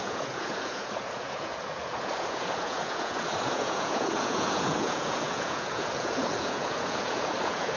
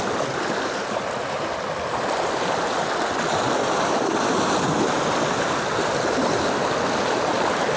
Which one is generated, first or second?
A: first